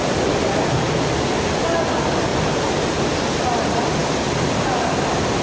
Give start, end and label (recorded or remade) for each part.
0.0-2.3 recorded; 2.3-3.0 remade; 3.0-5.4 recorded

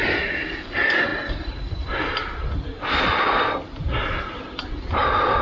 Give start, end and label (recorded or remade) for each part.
0.0-5.4 recorded

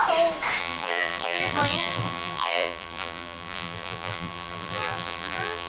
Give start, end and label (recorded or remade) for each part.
0.0-0.6 recorded; 0.6-5.7 remade

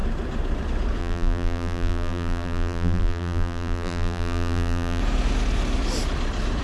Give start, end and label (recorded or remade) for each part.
0.0-1.0 recorded; 1.0-5.0 remade; 5.0-6.6 recorded